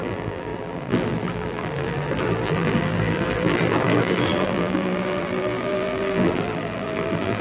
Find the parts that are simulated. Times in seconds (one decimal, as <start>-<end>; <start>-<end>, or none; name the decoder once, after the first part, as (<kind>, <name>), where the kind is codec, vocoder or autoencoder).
0.0-7.4 (vocoder, BigVGAN v2)